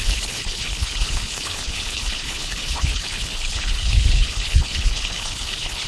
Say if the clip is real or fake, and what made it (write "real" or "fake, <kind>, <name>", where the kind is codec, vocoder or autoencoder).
fake, codec, HILCodec